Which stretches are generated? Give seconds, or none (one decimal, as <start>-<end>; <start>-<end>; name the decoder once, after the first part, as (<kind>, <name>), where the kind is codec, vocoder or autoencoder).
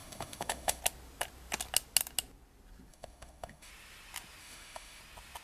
0.0-0.8 (autoencoder, DAC-VAE); 2.9-3.7; 4.4-5.0